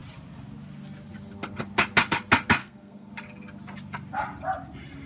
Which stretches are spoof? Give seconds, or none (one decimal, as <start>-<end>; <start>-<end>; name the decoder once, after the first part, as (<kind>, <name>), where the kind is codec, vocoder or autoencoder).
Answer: 2.6-3.1 (codec, SNAC)